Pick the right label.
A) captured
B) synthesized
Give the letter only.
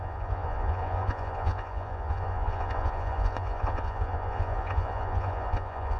B